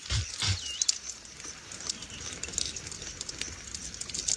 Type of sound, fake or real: real